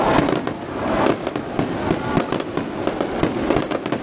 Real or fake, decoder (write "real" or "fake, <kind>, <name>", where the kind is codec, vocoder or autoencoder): real